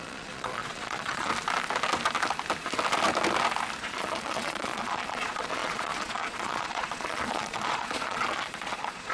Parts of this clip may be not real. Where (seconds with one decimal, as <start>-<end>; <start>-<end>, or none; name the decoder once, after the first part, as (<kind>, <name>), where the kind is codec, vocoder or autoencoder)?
0.0-1.3 (vocoder, Vocos); 3.8-9.1